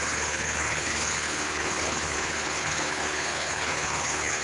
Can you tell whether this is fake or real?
fake